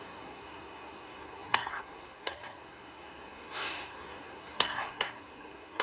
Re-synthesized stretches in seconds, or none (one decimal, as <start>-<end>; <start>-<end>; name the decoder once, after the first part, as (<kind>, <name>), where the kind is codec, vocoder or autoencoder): 0.0-5.8 (codec, SNAC)